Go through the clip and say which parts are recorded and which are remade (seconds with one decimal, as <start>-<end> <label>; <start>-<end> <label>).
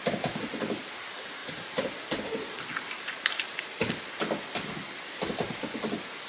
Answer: 0.0-6.3 recorded